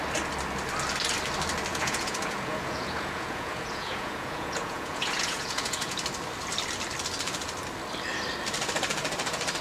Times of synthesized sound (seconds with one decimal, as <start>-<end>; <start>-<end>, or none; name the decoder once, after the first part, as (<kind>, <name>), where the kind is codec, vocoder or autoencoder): 1.7-6.0 (vocoder, Vocos)